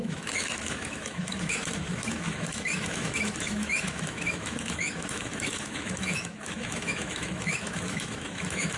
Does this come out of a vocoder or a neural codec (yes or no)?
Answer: yes